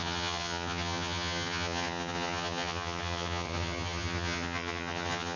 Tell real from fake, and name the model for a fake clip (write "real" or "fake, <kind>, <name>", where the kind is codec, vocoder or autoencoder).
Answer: fake, vocoder, HiFi-GAN